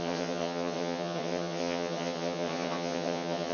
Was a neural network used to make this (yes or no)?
yes